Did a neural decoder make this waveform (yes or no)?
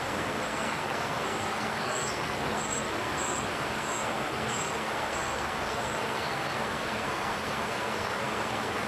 yes